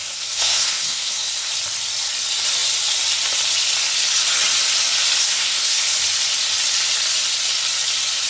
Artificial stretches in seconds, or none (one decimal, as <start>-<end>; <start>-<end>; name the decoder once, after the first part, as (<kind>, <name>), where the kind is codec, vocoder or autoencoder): 0.0-1.5 (codec, SNAC); 5.2-5.8